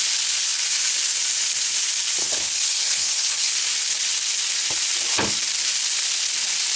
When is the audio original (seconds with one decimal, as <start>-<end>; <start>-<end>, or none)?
0.0-2.2; 3.5-6.8